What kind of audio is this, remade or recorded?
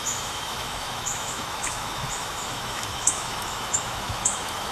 remade